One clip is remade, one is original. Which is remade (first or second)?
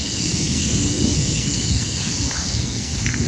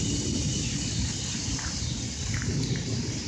first